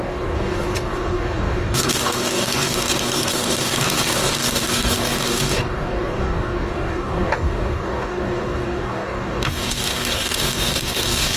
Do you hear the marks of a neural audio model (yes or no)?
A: yes